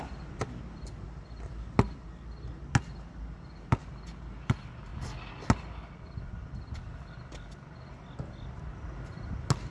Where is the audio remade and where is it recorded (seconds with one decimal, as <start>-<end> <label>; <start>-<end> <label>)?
0.0-9.7 recorded